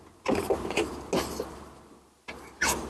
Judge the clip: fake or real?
real